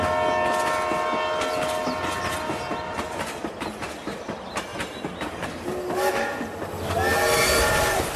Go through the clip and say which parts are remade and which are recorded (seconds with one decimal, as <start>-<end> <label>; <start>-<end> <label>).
0.0-7.1 recorded; 7.1-8.2 remade